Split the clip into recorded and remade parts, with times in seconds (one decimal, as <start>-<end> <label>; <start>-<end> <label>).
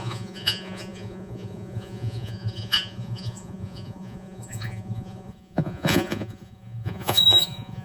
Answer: 0.0-7.8 remade